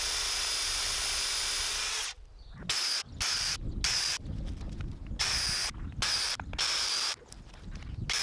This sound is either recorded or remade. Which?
recorded